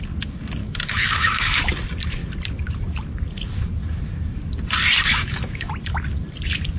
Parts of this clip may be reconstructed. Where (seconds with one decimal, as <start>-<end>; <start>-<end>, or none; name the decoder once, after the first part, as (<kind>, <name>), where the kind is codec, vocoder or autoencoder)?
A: 0.6-1.6 (autoencoder, DAC-VAE); 5.1-5.7